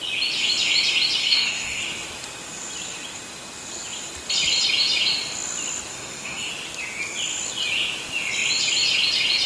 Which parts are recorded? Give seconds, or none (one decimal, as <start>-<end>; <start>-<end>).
0.0-1.2; 1.8-5.9; 6.5-9.5